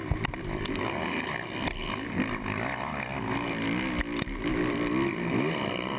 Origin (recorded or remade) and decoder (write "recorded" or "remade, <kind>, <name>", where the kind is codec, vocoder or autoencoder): recorded